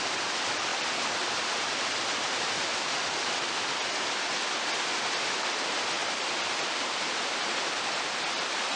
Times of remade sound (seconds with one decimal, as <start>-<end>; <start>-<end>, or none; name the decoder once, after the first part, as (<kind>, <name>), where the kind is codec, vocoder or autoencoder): none